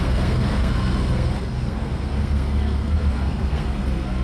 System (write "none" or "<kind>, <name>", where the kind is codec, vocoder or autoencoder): codec, SNAC